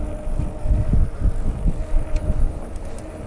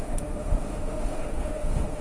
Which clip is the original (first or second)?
first